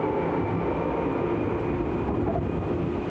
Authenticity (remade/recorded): recorded